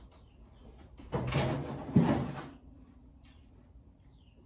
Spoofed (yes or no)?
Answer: no